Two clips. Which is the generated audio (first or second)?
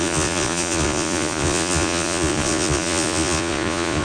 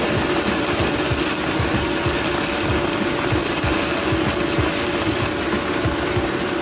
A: first